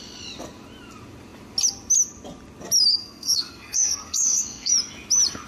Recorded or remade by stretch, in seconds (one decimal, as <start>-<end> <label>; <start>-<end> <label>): 0.0-2.9 recorded; 2.9-4.7 remade; 4.7-5.5 recorded